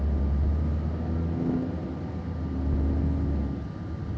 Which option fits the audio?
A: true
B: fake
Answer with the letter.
A